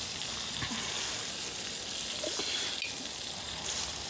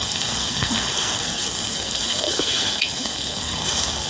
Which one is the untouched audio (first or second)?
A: first